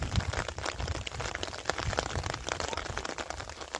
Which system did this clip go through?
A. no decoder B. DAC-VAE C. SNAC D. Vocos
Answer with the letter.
A